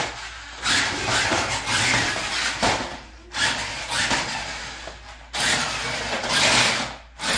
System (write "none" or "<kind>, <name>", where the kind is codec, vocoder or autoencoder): none